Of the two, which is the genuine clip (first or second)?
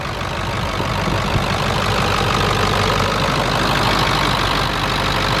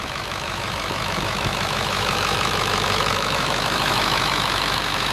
first